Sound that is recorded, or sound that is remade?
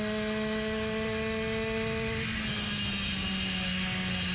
recorded